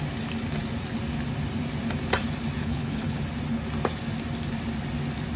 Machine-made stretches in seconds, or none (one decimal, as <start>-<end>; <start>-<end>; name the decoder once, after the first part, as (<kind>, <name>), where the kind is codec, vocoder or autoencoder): 2.6-3.2 (codec, HILCodec)

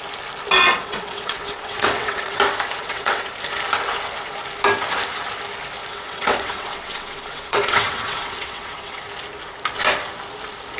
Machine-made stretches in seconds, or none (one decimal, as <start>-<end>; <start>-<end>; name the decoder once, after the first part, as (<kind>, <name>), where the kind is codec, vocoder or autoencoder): 0.7-2.4 (vocoder, WaveNeXt); 2.8-3.3; 5.8-9.0

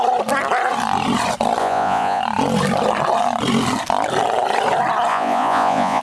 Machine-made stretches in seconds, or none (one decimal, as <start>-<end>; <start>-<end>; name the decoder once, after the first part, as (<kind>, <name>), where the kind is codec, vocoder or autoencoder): 1.6-2.2 (vocoder, Vocos); 5.1-6.0

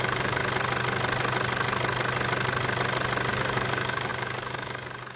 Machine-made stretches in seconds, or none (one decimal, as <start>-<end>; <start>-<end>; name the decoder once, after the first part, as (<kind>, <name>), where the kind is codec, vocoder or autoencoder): 0.0-0.4 (codec, DAC); 3.3-5.2

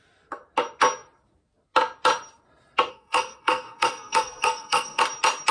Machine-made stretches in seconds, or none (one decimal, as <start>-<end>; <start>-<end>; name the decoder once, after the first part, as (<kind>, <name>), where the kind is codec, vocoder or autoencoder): 2.9-5.0 (codec, SNAC)

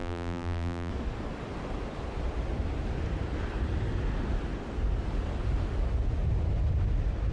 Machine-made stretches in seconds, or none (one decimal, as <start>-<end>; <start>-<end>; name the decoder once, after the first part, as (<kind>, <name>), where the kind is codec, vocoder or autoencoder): 0.0-0.9 (vocoder, BigVGAN v2)